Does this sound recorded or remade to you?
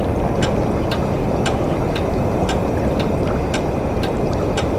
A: recorded